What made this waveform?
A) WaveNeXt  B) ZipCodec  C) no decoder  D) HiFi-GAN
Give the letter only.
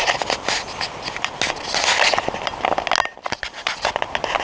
C